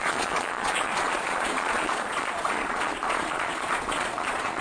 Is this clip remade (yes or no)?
yes